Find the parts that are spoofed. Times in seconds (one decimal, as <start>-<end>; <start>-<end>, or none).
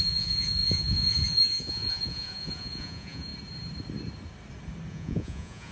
0.0-3.3; 4.9-5.7